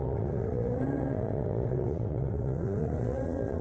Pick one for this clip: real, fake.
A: fake